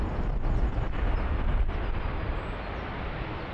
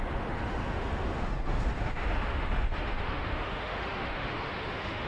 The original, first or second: first